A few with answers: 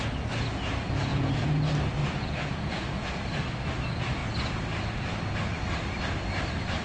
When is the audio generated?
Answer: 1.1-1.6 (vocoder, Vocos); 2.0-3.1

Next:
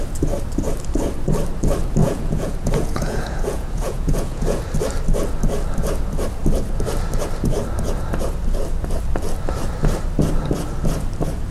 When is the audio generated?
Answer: 2.0-4.6 (vocoder, Vocos)

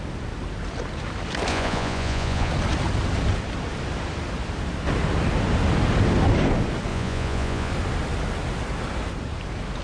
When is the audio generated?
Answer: 1.5-2.5 (vocoder, Vocos); 6.9-7.7

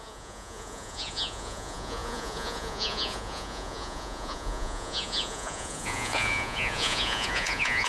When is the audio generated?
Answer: 0.0-7.9 (vocoder, Vocos)

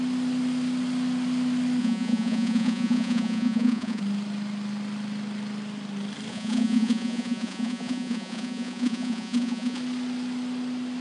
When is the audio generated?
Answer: 1.8-4.0 (vocoder, Vocos); 6.3-9.8